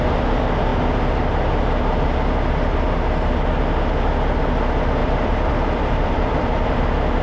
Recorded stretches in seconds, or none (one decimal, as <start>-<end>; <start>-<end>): 0.0-5.0; 6.8-7.2